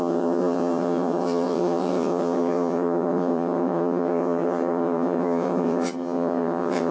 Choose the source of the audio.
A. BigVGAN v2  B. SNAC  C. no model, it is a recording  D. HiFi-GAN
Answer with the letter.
D